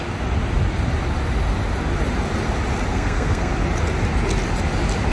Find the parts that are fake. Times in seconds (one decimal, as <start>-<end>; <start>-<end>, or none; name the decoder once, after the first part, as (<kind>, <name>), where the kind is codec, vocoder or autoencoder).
2.9-3.5 (codec, SNAC)